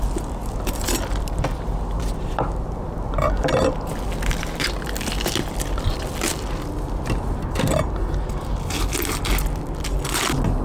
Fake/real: real